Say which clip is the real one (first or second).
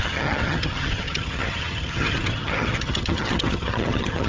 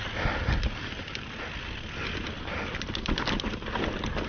second